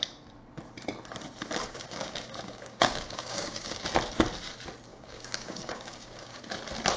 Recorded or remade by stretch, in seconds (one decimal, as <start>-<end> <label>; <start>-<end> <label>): 0.0-1.6 recorded; 1.6-3.8 remade; 3.8-4.9 recorded; 4.9-6.4 remade; 6.4-7.0 recorded